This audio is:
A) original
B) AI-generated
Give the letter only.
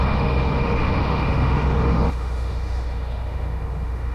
B